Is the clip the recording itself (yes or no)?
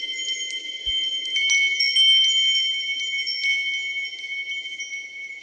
yes